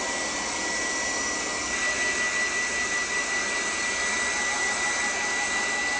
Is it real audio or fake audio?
real